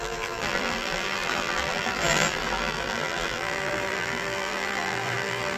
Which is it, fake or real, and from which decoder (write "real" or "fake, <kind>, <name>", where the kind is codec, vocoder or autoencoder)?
fake, vocoder, BigVGAN v2